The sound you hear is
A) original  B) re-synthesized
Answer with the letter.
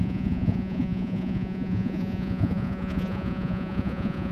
B